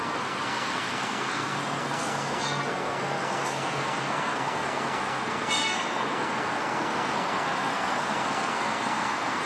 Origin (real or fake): fake